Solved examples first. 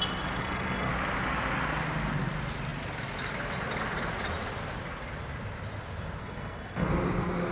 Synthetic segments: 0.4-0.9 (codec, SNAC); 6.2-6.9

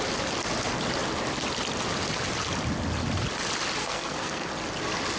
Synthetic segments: 3.8-4.5 (codec, SNAC)

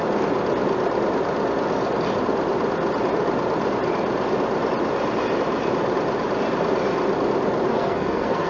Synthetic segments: 7.7-8.5 (codec, SNAC)

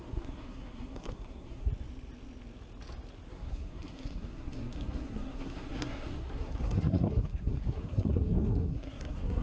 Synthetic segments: 0.0-1.7 (codec, SNAC); 3.3-9.4